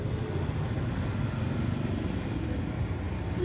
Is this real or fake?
real